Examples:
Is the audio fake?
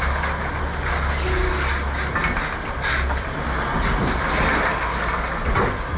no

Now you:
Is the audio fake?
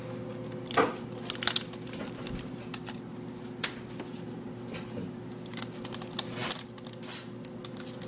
no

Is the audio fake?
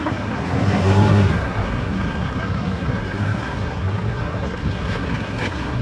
yes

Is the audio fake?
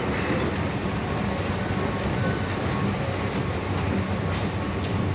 no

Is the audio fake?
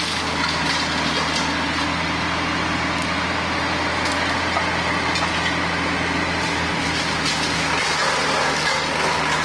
no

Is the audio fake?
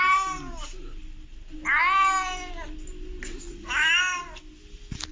no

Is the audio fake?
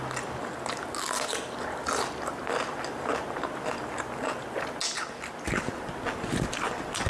no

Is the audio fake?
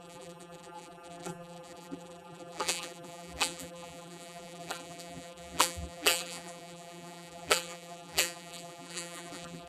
yes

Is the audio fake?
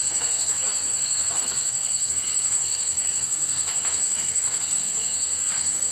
yes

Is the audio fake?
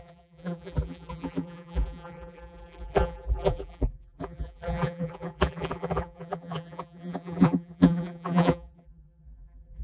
yes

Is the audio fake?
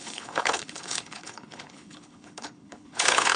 yes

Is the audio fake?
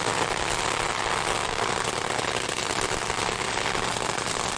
no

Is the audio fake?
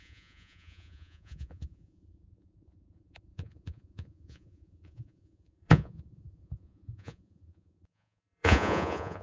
yes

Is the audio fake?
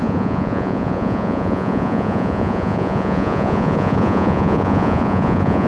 yes